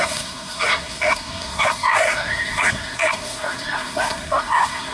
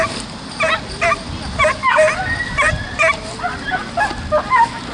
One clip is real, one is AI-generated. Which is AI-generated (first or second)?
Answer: first